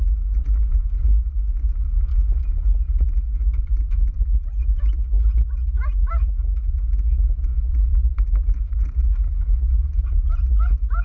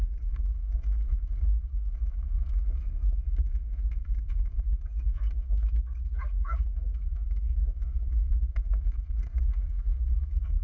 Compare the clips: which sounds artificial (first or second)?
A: second